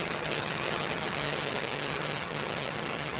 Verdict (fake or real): fake